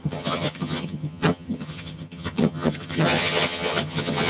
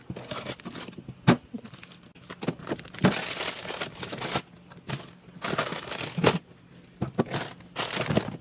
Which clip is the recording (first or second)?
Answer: second